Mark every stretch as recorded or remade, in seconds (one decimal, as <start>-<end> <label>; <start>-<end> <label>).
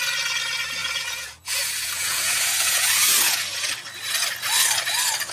0.0-0.8 recorded; 0.8-3.7 remade; 3.7-5.3 recorded